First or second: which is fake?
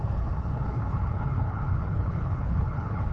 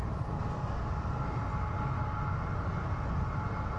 first